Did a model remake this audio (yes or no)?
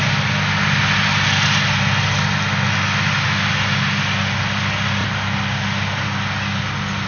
no